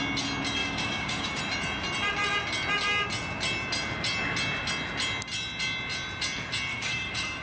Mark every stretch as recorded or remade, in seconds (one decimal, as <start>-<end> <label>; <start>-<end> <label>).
0.0-0.6 recorded; 0.6-1.4 remade; 1.4-6.7 recorded; 6.7-7.4 remade